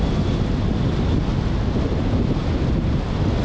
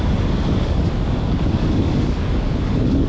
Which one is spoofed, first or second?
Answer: second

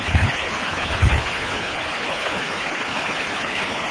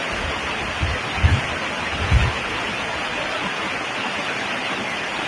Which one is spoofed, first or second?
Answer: first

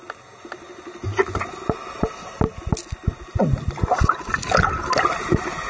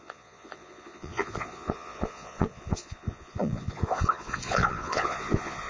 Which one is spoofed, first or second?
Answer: second